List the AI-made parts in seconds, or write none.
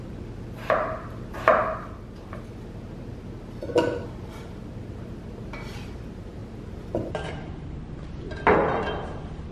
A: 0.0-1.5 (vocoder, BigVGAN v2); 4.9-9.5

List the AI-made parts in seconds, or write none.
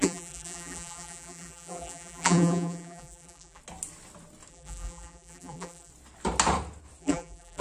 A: 0.0-3.6 (vocoder, BigVGAN v2); 4.5-5.9; 7.0-7.6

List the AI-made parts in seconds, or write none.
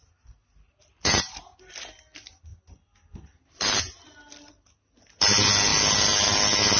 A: 0.0-1.4 (vocoder, BigVGAN v2)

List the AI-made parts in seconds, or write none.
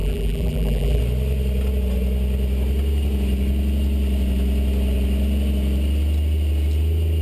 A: 0.0-1.0 (vocoder, BigVGAN v2)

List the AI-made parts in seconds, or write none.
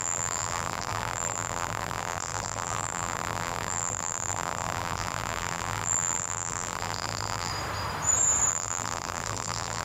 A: 0.0-7.5 (vocoder, BigVGAN v2); 8.5-9.8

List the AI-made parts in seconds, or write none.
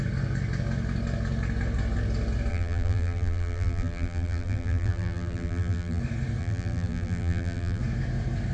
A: 2.5-6.0 (vocoder, BigVGAN v2); 6.4-7.8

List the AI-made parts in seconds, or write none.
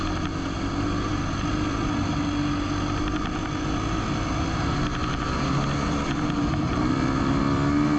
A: 1.1-2.1 (vocoder, BigVGAN v2)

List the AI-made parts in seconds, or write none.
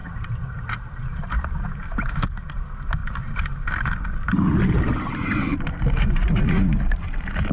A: 3.0-4.3 (vocoder, BigVGAN v2); 5.5-6.8